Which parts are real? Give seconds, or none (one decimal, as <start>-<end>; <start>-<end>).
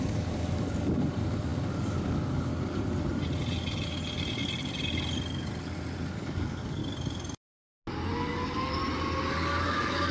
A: 2.5-6.1; 6.8-8.1; 8.8-9.3